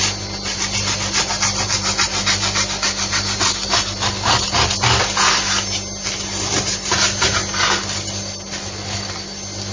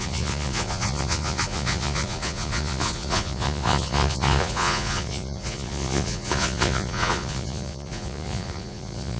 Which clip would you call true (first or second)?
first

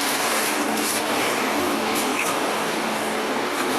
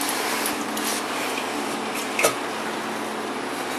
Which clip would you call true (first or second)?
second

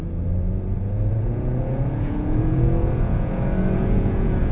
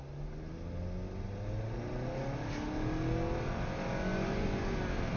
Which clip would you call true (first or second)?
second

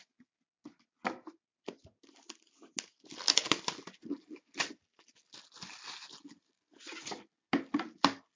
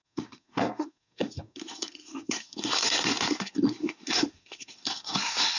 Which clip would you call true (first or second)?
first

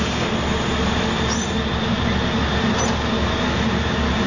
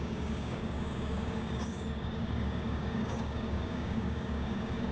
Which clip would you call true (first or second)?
first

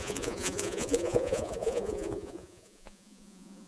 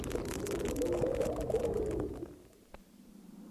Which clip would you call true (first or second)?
second